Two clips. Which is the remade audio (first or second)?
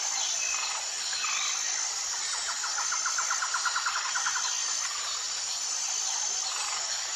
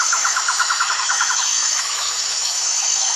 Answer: second